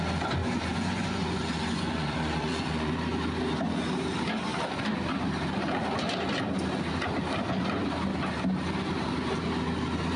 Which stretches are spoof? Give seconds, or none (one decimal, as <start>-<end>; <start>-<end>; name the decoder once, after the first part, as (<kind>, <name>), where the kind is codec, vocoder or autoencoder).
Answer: 0.4-2.9 (vocoder, Vocos)